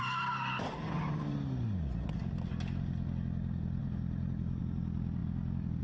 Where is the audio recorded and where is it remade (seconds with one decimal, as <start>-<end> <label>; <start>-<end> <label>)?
0.0-3.8 recorded; 3.8-4.6 remade; 4.6-5.8 recorded